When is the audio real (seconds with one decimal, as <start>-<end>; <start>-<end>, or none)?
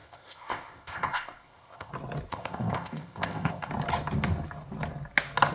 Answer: 1.9-2.3; 3.7-5.5